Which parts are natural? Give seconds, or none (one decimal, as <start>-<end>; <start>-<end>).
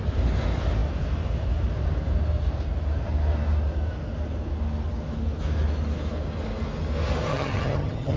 0.0-7.3